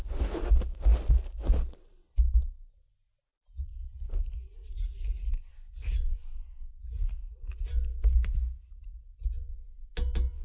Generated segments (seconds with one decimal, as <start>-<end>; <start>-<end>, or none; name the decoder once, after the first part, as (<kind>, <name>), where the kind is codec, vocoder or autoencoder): none